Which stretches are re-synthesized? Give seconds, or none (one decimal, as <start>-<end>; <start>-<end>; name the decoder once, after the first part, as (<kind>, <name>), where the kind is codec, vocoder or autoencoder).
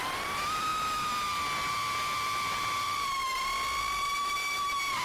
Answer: 0.0-0.7 (vocoder, BigVGAN v2); 1.7-3.2; 3.8-5.0